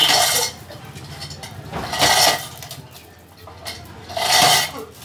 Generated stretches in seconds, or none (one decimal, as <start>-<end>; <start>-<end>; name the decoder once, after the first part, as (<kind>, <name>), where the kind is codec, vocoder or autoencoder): none